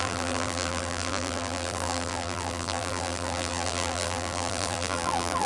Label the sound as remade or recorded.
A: remade